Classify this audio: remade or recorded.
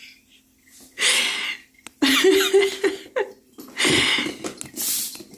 recorded